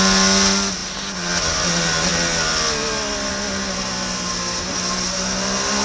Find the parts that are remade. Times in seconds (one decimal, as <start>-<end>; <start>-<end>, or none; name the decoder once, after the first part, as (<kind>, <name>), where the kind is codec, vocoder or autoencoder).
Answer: none